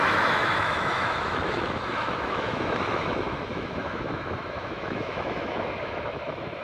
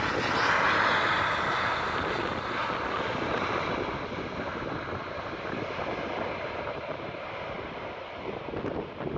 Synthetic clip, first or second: first